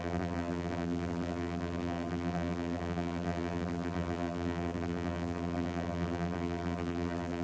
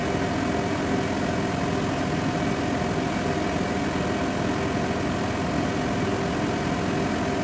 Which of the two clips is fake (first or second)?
first